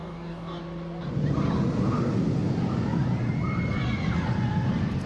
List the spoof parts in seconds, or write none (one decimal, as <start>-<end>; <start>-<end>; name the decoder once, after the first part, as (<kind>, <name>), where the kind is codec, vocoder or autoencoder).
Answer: 0.0-0.6 (codec, DAC)